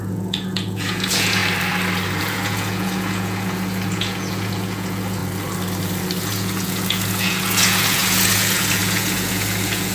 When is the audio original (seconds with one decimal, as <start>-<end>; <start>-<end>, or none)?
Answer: 1.4-2.2; 5.2-6.2